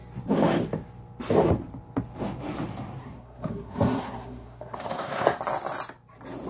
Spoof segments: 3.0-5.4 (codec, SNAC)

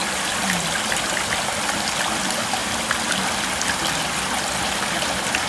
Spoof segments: none

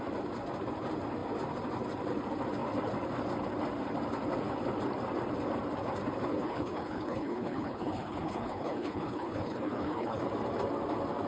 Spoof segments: 6.3-10.2 (codec, HILCodec)

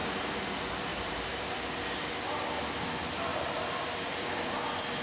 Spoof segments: 0.9-1.5 (vocoder, BigVGAN v2); 3.3-4.1

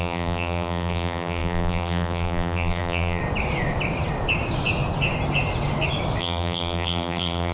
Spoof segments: 0.0-3.2 (vocoder, BigVGAN v2); 6.2-7.5

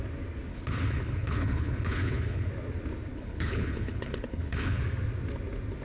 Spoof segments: 0.5-2.5 (codec, HILCodec); 3.1-4.8